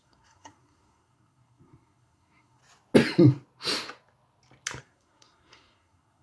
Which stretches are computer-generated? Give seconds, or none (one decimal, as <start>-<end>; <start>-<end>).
0.0-2.6; 4.8-6.2